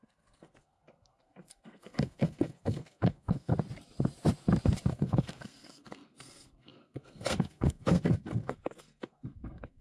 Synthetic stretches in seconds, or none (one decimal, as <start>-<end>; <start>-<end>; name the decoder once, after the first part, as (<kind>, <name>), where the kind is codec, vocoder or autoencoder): 0.0-3.5 (codec, SNAC); 4.9-9.8